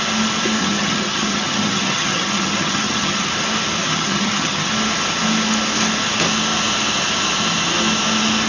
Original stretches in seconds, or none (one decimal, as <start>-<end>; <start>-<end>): 0.0-0.6; 3.3-3.8; 4.7-8.5